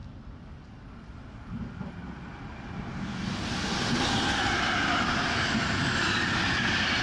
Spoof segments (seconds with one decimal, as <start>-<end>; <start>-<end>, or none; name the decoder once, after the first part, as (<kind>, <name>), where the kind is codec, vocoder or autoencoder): none